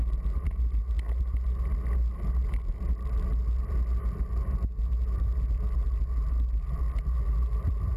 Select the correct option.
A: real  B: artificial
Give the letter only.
A